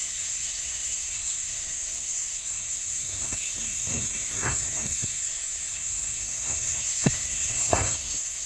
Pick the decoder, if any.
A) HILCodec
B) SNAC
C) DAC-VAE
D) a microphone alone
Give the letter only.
B